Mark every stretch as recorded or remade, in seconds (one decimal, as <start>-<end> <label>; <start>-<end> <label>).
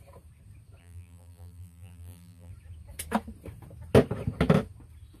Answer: 0.0-0.8 recorded; 0.8-2.5 remade; 2.5-5.2 recorded